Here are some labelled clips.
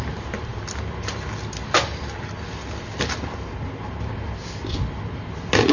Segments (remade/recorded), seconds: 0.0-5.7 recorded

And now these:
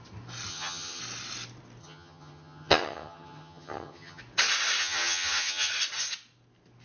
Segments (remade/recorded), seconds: 0.0-0.5 recorded; 0.5-1.0 remade; 1.0-1.8 recorded; 1.8-4.2 remade; 4.2-4.8 recorded; 4.8-5.7 remade; 5.7-6.8 recorded